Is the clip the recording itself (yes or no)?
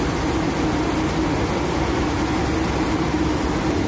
yes